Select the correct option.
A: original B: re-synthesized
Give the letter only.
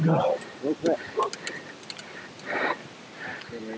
A